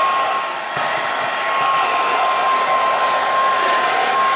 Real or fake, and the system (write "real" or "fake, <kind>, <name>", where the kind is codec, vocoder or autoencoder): real